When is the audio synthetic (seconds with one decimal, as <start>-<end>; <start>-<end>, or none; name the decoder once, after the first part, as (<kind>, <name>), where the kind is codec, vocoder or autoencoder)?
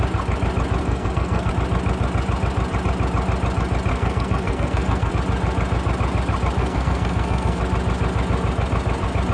0.8-1.5 (codec, SNAC); 3.9-5.1; 6.6-7.6